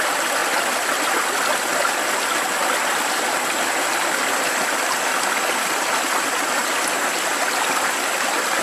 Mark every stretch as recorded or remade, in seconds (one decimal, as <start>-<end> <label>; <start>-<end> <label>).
0.0-8.6 recorded

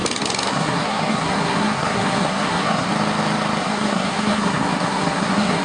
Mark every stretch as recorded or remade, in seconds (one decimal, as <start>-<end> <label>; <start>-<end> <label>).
0.0-0.5 recorded; 0.5-2.9 remade; 2.9-3.6 recorded; 3.6-5.6 remade

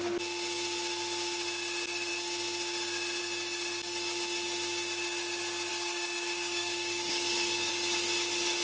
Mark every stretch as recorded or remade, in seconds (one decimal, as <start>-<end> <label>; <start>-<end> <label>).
0.0-5.7 recorded; 5.7-7.7 remade; 7.7-8.6 recorded

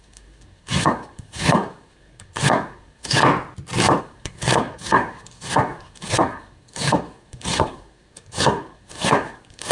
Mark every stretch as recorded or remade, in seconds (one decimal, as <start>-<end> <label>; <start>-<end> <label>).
0.0-3.2 remade; 3.2-4.0 recorded; 4.0-9.7 remade

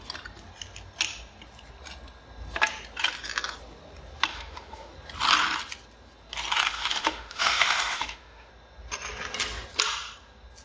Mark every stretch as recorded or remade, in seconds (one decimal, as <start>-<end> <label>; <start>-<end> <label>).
0.0-4.3 recorded; 4.3-4.9 remade; 4.9-6.7 recorded; 6.7-8.5 remade; 8.5-10.6 recorded

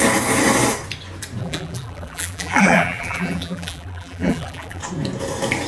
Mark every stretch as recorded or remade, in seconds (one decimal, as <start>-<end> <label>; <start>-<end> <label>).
0.0-1.4 recorded; 1.4-4.8 remade; 4.8-5.7 recorded

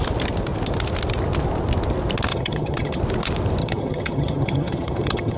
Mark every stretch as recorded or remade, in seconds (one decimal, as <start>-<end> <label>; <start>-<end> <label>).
0.0-2.3 recorded; 2.3-3.0 remade; 3.0-3.6 recorded; 3.6-5.4 remade